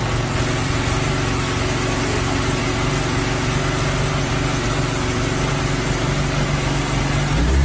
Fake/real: real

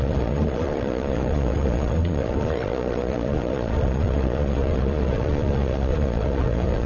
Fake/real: fake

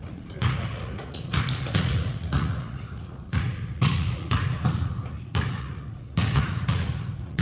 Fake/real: fake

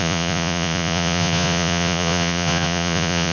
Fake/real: fake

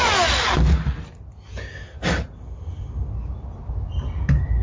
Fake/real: real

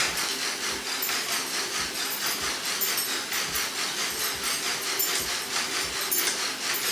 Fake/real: real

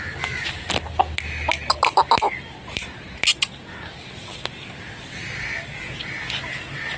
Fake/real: real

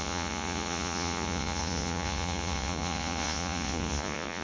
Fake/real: fake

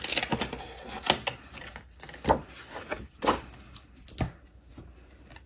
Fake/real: real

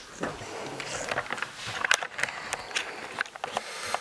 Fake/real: real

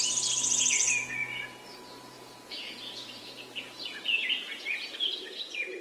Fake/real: fake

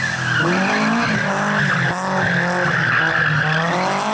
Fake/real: real